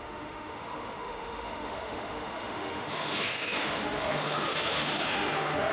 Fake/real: fake